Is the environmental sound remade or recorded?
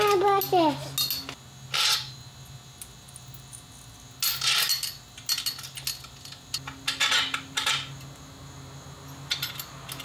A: recorded